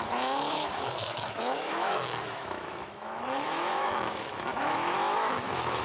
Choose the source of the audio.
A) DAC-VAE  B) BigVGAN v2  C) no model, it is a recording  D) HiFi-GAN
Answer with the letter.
A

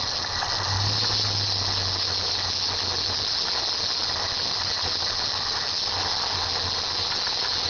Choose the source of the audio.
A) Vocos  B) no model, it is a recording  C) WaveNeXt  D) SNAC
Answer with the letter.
B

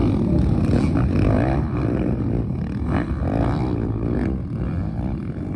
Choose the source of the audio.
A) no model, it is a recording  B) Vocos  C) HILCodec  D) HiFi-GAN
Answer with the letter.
A